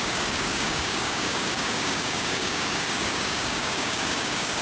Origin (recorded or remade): remade